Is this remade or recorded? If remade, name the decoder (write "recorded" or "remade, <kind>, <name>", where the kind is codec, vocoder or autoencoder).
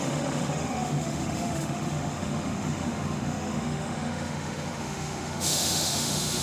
remade, autoencoder, DAC-VAE